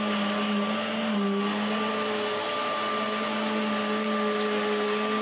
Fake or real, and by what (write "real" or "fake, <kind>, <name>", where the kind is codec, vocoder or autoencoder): real